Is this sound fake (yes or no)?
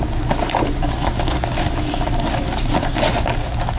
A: no